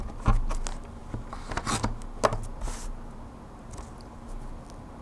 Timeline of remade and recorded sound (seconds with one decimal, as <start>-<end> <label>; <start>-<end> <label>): 0.0-5.0 recorded